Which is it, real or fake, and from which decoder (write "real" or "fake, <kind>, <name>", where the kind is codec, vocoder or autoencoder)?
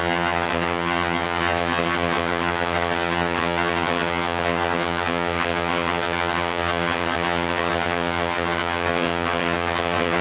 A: fake, vocoder, HiFi-GAN